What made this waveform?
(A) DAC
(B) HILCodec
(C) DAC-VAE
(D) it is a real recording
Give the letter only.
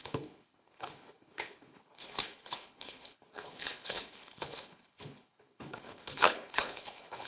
B